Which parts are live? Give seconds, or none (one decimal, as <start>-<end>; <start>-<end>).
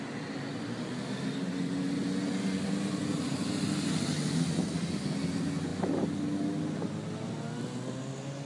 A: 0.0-8.5